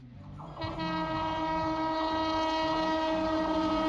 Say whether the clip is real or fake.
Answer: real